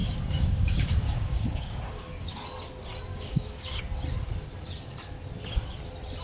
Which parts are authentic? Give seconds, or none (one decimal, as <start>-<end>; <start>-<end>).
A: 2.3-3.1; 3.8-6.2